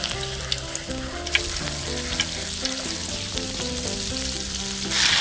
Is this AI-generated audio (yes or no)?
no